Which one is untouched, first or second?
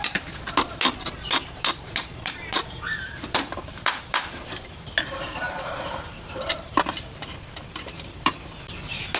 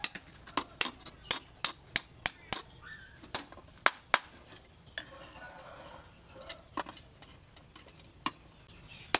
second